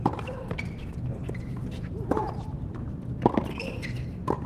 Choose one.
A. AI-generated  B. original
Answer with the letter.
A